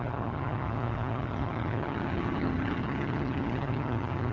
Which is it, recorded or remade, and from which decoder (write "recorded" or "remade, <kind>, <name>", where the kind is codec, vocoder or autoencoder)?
remade, vocoder, HiFi-GAN